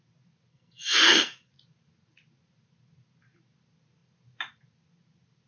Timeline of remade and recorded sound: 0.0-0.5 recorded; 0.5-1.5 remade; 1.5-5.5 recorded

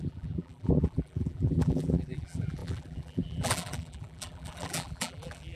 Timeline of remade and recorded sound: 0.0-5.6 remade